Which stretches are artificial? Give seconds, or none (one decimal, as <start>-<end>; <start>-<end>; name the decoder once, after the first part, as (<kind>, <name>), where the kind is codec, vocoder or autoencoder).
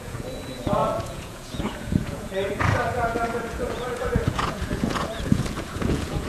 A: 0.0-6.3 (vocoder, Vocos)